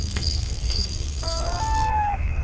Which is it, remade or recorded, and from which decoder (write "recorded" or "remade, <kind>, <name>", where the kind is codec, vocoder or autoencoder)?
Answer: remade, codec, SNAC